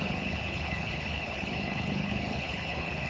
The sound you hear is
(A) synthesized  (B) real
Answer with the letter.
A